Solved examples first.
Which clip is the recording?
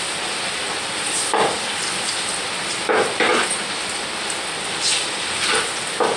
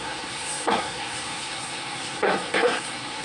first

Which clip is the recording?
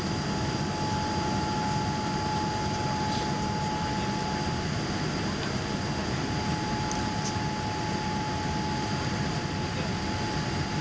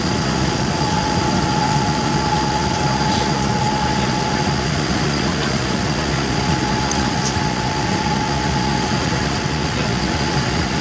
first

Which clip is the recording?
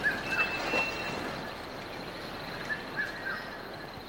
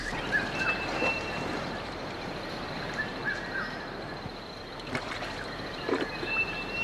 first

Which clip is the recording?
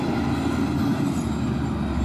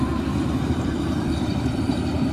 first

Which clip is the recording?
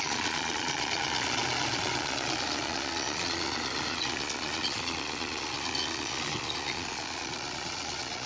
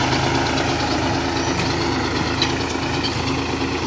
second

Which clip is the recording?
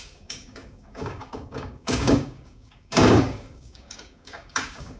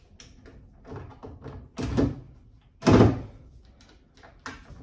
second